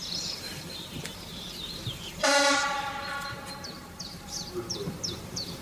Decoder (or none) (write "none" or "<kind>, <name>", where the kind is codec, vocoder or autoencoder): vocoder, BigVGAN v2